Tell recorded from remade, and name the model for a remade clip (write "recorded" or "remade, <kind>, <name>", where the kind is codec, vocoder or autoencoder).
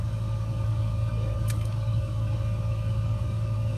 remade, codec, DAC